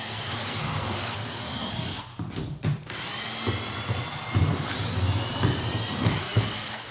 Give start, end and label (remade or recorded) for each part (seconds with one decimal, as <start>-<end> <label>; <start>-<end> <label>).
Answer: 0.0-2.1 remade; 2.1-6.2 recorded; 6.2-6.9 remade